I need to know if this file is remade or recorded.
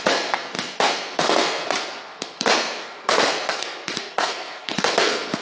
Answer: remade